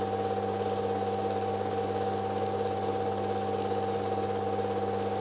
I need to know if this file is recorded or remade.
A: recorded